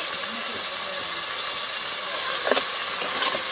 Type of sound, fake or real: real